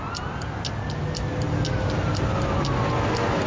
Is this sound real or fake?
real